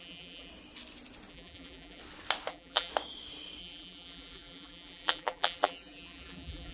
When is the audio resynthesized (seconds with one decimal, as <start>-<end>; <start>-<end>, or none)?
0.0-0.5; 1.3-2.0; 2.5-2.9; 3.6-6.7